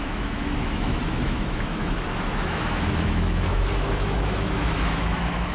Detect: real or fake fake